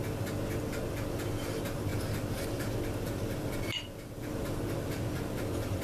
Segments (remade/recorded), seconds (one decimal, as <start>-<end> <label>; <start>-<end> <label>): 0.0-1.9 recorded; 1.9-5.8 remade